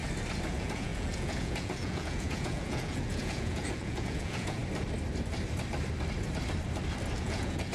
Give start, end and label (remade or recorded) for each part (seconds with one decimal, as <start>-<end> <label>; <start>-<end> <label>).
0.0-0.5 recorded; 0.5-4.6 remade; 4.6-7.2 recorded; 7.2-7.7 remade